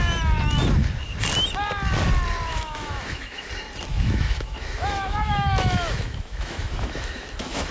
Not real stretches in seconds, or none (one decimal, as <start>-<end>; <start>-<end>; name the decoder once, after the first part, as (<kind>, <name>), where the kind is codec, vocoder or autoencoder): 2.5-3.5 (autoencoder, DAC-VAE); 3.9-7.7